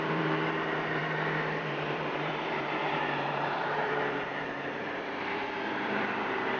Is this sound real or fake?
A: fake